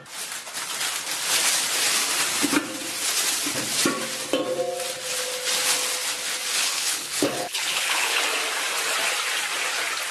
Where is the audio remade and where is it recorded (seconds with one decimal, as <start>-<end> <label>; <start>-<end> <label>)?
0.0-6.5 recorded; 6.5-8.2 remade; 8.2-10.1 recorded

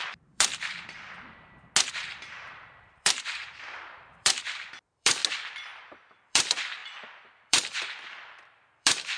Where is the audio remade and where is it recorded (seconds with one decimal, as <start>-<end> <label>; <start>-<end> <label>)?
0.0-0.5 remade; 0.5-1.9 recorded; 1.9-5.2 remade; 5.2-5.8 recorded; 5.8-6.8 remade; 6.8-7.5 recorded; 7.5-9.2 remade

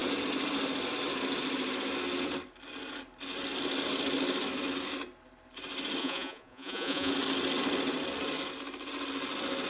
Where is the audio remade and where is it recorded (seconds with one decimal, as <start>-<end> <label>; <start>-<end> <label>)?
0.0-6.0 recorded; 6.0-7.1 remade; 7.1-9.7 recorded

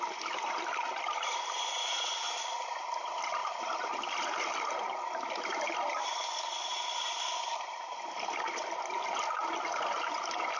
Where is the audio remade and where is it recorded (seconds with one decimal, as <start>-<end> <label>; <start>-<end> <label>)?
0.0-10.6 recorded